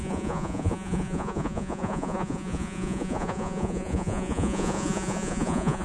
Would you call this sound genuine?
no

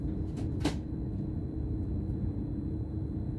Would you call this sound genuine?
yes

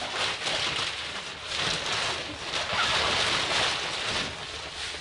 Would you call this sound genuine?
yes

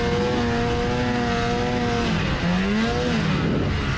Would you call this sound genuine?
yes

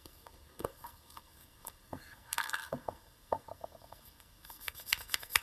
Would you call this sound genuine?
no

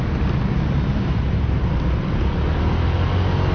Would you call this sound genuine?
yes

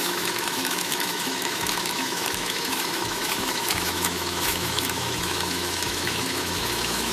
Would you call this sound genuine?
no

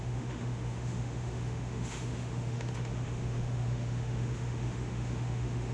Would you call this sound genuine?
no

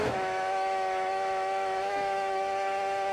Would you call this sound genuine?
no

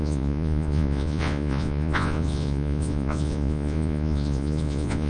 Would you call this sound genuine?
no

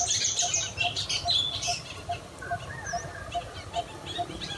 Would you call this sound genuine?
yes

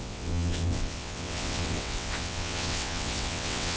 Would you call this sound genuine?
no